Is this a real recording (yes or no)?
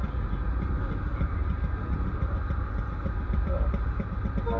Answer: yes